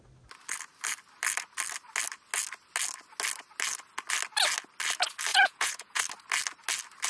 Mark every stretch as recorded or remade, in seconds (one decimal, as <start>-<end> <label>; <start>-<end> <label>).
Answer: 0.0-5.3 recorded; 5.3-6.0 remade; 6.0-7.1 recorded